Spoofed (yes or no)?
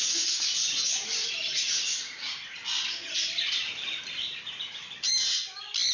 yes